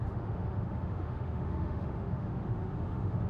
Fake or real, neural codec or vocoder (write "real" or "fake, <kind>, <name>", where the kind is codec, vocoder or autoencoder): fake, autoencoder, DAC-VAE